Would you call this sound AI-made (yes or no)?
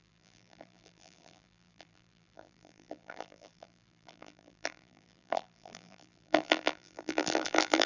yes